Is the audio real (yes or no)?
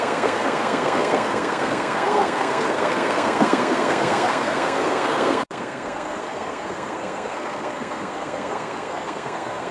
no